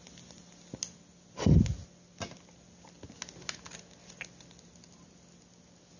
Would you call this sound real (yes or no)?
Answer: yes